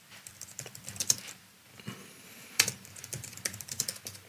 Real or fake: fake